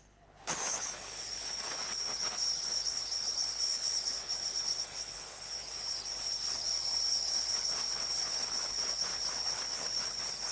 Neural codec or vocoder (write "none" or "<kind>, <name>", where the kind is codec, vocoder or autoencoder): codec, HILCodec